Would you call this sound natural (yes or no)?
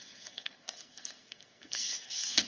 no